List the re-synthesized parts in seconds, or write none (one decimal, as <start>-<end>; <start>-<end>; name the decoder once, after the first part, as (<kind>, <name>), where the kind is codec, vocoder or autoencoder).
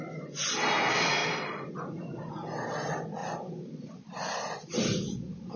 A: 1.2-2.3 (vocoder, BigVGAN v2); 3.2-5.6